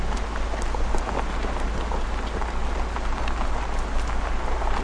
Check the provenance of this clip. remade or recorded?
recorded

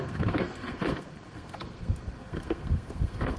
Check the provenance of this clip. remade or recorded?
remade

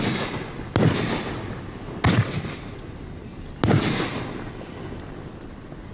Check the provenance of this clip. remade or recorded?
recorded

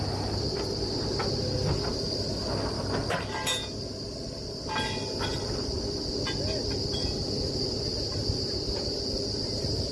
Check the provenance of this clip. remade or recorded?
recorded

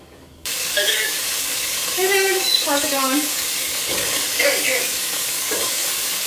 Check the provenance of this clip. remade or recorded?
remade